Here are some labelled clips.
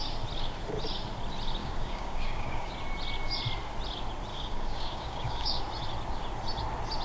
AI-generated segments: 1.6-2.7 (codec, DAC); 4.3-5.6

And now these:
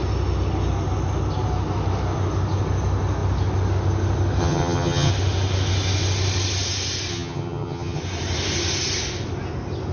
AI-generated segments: 4.4-5.1 (vocoder, HiFi-GAN); 7.1-8.0

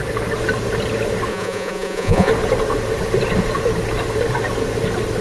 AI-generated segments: 1.3-2.3 (vocoder, Vocos)

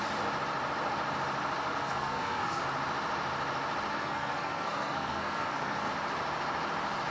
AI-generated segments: 1.7-2.6 (codec, SNAC); 3.9-5.9